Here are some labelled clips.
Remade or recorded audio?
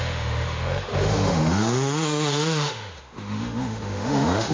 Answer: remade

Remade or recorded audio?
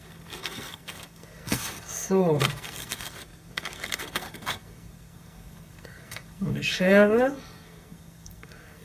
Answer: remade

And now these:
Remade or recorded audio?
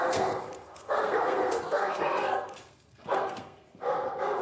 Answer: remade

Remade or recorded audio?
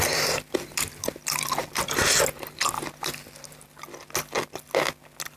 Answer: recorded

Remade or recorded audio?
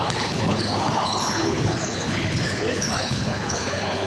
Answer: remade